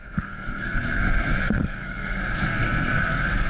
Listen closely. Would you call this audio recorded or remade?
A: remade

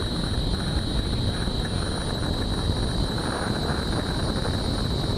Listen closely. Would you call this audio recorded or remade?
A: recorded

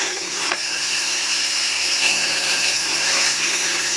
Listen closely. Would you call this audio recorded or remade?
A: remade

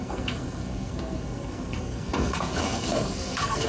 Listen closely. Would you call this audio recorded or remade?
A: remade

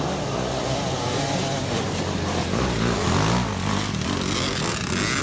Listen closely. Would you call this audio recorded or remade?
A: recorded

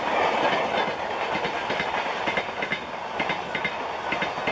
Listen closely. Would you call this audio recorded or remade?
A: recorded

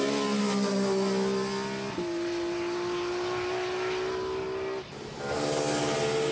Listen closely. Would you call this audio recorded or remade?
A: recorded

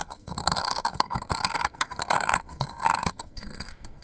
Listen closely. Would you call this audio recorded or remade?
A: remade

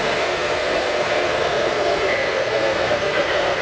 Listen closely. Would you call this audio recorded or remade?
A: remade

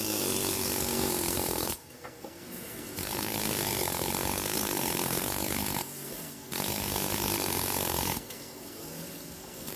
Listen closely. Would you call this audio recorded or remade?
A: remade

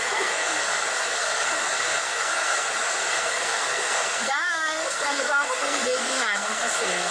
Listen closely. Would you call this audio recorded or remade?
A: remade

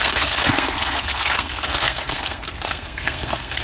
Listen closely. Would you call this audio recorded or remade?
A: remade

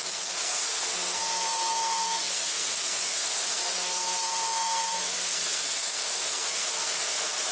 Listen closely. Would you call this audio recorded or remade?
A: remade